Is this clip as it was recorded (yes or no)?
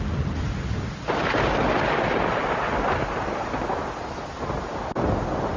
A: yes